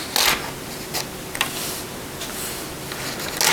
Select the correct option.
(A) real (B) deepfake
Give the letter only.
A